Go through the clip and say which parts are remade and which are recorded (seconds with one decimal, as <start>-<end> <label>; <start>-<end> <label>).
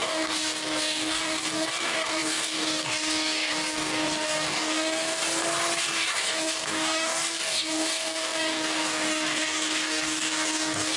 0.0-5.2 remade; 5.2-5.8 recorded; 5.8-11.0 remade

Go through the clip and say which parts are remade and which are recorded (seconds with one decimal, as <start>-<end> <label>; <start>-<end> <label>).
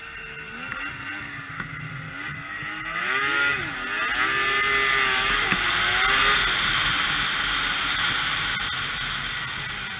0.0-2.3 recorded; 2.3-3.6 remade; 3.6-10.0 recorded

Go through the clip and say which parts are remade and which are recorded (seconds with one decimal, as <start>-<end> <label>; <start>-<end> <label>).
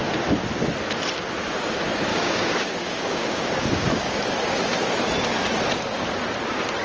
0.0-2.1 recorded; 2.1-4.2 remade; 4.2-6.8 recorded